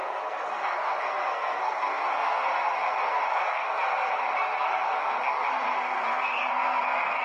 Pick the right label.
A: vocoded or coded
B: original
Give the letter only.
A